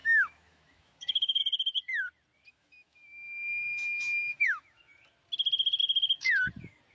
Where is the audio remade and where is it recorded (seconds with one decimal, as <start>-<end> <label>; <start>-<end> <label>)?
0.0-1.4 remade; 1.4-2.5 recorded; 2.5-4.8 remade; 4.8-6.9 recorded